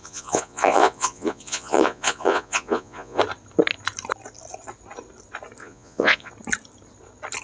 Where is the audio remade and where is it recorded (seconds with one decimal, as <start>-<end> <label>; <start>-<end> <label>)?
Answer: 0.0-3.2 remade; 3.2-5.6 recorded; 5.6-6.3 remade; 6.3-7.4 recorded